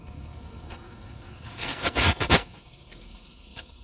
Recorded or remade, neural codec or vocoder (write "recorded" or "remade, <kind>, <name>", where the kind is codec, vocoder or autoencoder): remade, codec, SNAC